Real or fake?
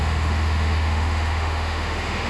fake